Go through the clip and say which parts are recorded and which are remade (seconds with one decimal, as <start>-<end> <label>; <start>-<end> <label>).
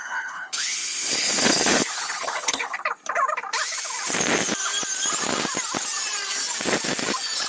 0.0-2.8 remade; 2.8-7.5 recorded